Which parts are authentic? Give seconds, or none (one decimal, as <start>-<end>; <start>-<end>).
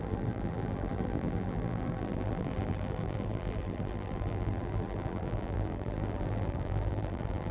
none